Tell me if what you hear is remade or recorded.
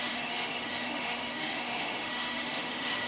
remade